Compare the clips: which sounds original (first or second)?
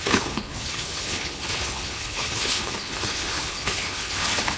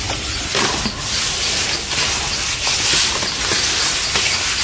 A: second